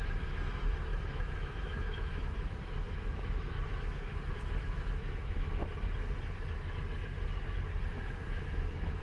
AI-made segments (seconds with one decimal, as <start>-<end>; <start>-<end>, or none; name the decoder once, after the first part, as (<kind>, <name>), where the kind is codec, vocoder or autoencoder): 0.0-5.6 (autoencoder, DAC-VAE); 7.9-9.0